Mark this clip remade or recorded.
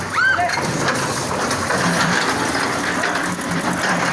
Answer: remade